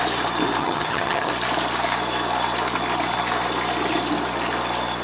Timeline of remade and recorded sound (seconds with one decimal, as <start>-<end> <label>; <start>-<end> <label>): 0.0-0.6 recorded; 0.6-1.3 remade; 1.3-5.0 recorded